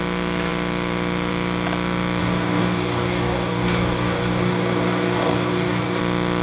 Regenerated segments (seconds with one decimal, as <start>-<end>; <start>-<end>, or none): 2.2-6.0